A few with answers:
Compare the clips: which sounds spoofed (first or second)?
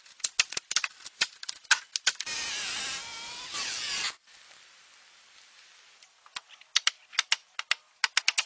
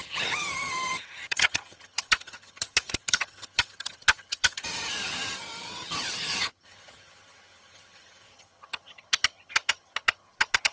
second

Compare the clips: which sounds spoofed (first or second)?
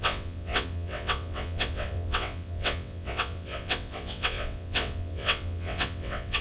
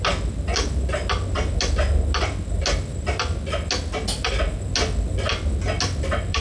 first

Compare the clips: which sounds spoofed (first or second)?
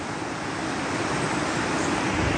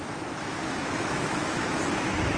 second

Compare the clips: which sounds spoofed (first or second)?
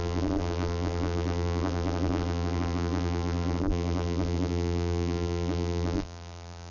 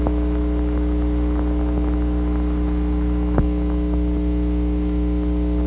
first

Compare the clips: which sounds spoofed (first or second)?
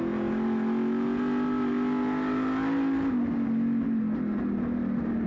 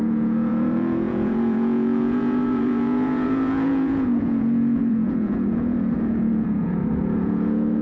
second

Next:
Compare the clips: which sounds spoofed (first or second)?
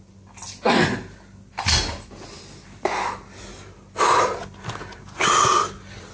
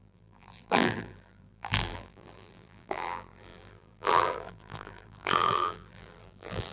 second